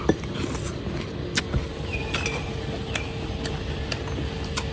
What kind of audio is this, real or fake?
real